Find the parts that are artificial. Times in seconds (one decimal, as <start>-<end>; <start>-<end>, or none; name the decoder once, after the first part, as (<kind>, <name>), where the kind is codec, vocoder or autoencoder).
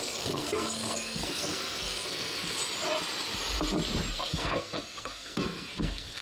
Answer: 0.0-2.6 (codec, SNAC); 4.1-6.2